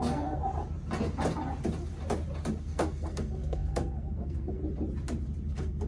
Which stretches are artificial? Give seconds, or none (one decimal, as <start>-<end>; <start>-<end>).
0.0-0.4; 2.6-4.6; 5.5-5.9